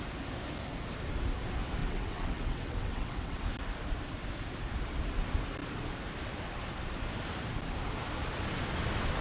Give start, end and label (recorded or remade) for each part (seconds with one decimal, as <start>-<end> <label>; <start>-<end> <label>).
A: 0.0-1.8 recorded; 1.8-3.4 remade; 3.4-9.2 recorded